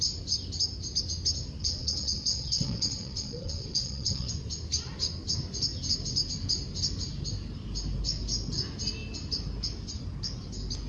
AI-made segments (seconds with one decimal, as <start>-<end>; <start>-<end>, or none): 1.6-4.3